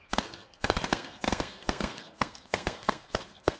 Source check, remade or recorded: remade